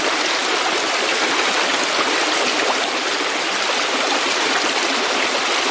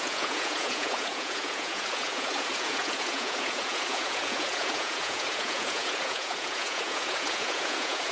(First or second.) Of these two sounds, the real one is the first